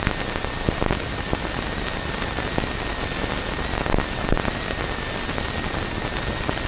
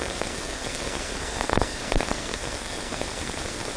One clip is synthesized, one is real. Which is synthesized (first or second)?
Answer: second